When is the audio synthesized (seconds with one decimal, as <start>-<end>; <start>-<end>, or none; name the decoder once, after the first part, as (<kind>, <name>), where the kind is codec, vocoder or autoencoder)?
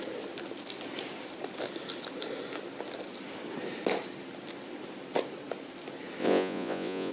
6.2-7.1 (vocoder, Vocos)